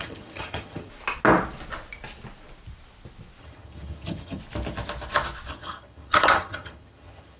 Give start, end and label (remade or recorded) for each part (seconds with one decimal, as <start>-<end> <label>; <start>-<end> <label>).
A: 0.0-0.9 remade; 0.9-3.4 recorded; 3.4-4.4 remade; 4.4-5.5 recorded; 5.5-7.4 remade